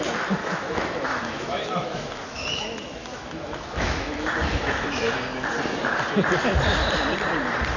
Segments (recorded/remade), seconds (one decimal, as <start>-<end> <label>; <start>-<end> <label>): 0.0-0.4 recorded; 0.4-5.1 remade; 5.1-7.8 recorded